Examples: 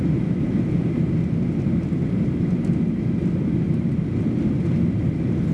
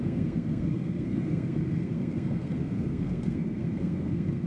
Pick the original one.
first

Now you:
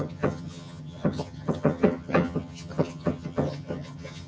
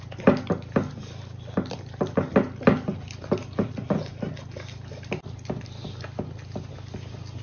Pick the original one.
second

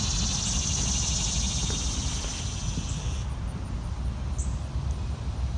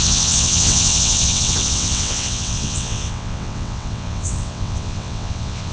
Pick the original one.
first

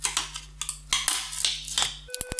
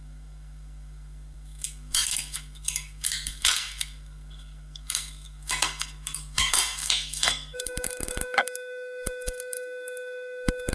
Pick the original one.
first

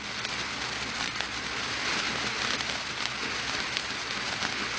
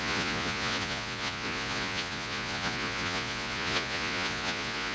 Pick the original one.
first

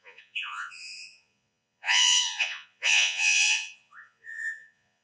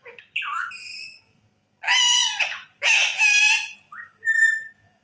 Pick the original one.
second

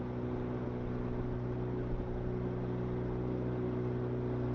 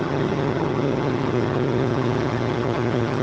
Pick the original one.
first